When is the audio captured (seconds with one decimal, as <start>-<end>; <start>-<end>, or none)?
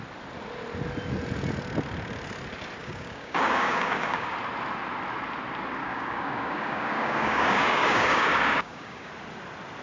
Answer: 0.0-2.8; 4.3-5.8; 9.1-9.8